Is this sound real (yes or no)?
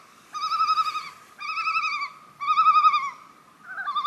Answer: yes